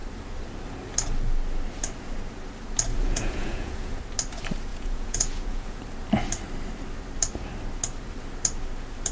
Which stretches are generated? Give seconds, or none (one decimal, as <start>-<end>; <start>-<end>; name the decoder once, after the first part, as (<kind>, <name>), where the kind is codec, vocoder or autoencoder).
2.9-4.0 (vocoder, Vocos); 4.7-5.8